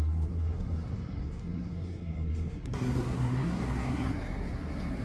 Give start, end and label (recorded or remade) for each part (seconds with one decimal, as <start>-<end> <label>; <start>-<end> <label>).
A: 0.0-5.0 remade